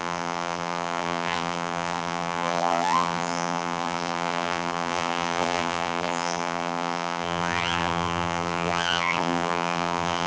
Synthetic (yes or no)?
yes